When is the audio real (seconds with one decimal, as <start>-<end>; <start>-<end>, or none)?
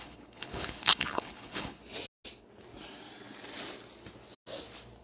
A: 1.8-5.0